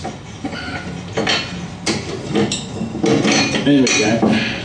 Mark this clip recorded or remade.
recorded